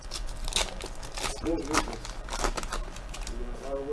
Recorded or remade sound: recorded